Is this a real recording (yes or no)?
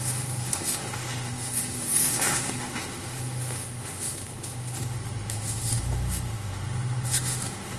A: no